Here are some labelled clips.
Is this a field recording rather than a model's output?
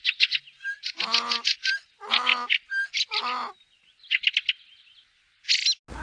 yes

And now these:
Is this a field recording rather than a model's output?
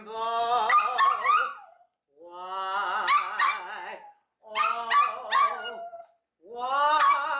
yes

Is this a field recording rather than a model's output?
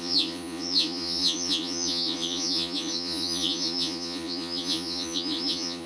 no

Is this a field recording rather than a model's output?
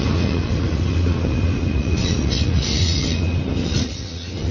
no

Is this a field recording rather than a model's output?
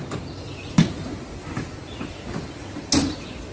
yes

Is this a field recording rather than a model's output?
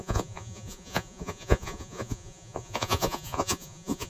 no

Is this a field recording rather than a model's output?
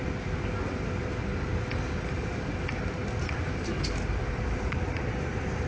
yes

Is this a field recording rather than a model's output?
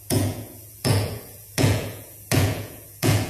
no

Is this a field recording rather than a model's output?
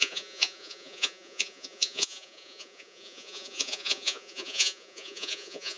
no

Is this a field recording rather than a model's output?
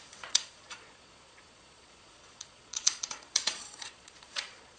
no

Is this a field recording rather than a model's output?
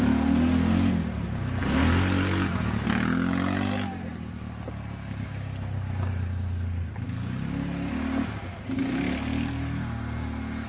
yes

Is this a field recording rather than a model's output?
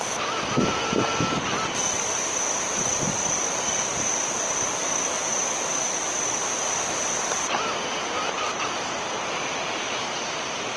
yes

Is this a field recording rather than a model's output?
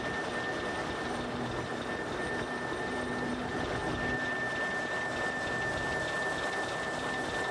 yes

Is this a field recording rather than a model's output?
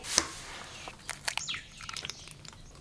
yes